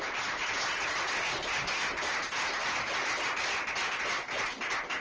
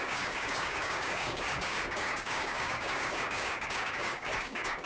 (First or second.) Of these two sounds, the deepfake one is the second